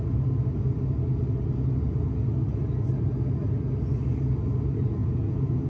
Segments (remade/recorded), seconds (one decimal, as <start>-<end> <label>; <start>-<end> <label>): 0.0-5.0 recorded; 5.0-5.7 remade